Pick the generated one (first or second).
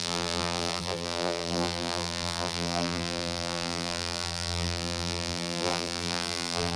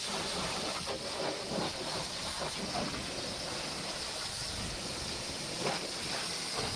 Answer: first